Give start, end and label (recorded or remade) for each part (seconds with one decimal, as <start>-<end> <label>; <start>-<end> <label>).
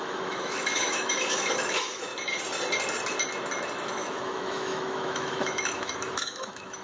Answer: 0.0-2.1 remade; 2.1-3.9 recorded; 3.9-6.8 remade